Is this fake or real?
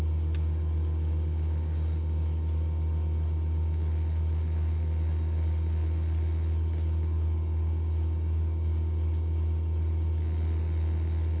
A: real